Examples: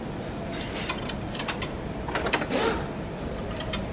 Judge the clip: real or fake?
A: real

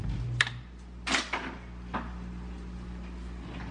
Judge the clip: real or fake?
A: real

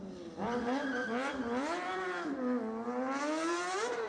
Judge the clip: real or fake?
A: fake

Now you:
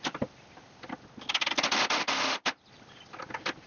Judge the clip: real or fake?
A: real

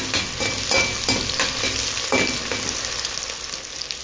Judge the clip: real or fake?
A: real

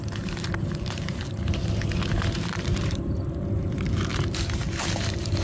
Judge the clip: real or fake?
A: fake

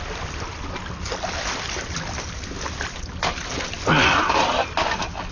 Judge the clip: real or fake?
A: real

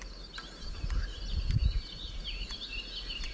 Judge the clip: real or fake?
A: real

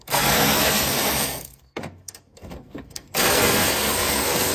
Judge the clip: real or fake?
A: fake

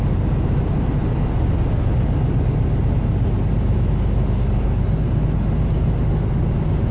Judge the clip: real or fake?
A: real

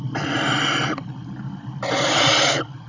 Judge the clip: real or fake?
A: real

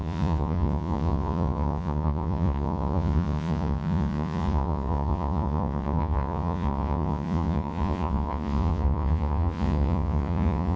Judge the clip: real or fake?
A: fake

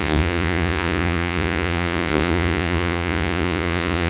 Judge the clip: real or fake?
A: fake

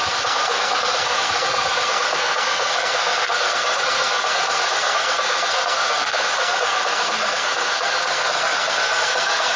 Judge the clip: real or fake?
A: fake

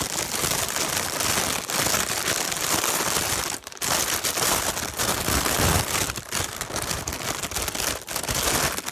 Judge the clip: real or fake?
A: real